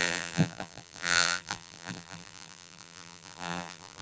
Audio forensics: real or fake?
fake